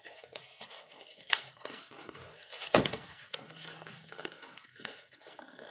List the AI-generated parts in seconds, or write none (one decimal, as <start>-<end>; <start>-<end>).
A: 0.0-5.7